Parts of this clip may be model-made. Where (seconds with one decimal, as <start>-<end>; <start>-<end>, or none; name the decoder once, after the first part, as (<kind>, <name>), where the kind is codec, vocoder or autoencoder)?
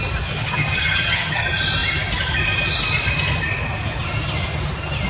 0.4-1.4 (vocoder, HiFi-GAN)